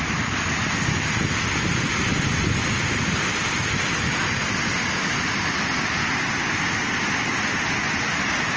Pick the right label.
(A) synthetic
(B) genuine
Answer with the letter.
B